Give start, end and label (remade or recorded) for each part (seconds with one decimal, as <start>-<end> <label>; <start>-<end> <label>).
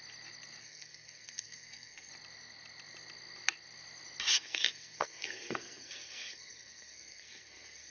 0.0-0.6 recorded; 0.6-2.1 remade; 2.1-4.3 recorded; 4.3-7.9 remade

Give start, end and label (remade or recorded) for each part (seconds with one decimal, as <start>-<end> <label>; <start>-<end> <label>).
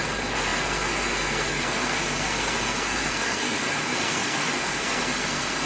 0.0-5.7 remade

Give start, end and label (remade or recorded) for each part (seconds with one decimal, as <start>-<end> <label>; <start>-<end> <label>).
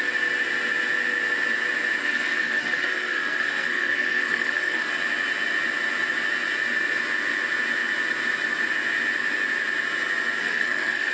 0.0-2.0 recorded; 2.0-4.9 remade; 4.9-10.4 recorded; 10.4-11.1 remade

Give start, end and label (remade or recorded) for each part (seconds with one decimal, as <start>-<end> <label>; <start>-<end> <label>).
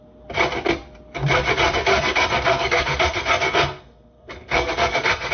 0.0-1.9 recorded; 1.9-5.3 remade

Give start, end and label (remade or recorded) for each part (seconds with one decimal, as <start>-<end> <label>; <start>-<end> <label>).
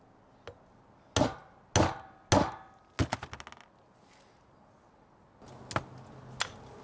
0.0-6.8 recorded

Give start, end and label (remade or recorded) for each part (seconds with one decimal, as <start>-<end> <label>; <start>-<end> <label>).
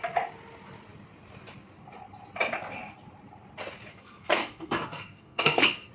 0.0-3.9 recorded; 3.9-5.9 remade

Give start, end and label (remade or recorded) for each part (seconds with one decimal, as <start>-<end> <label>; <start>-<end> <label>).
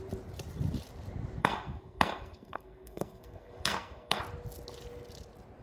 0.0-1.4 recorded; 1.4-4.2 remade; 4.2-5.6 recorded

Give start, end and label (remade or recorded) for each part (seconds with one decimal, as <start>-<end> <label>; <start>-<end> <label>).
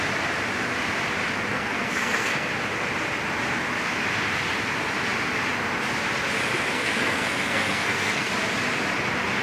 0.0-1.5 recorded; 1.5-2.5 remade; 2.5-6.7 recorded; 6.7-8.3 remade; 8.3-9.4 recorded